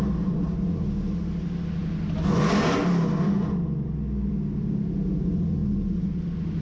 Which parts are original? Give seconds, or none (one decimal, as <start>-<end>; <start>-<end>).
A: 0.0-6.6